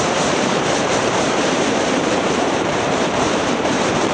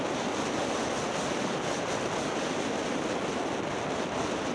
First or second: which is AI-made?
first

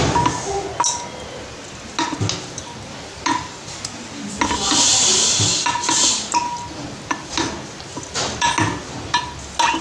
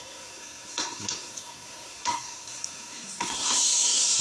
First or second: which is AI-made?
second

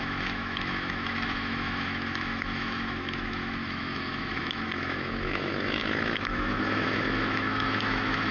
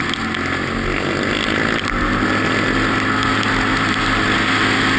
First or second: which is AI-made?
first